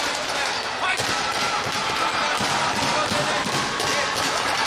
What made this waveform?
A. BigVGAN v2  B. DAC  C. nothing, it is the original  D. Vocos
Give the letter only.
C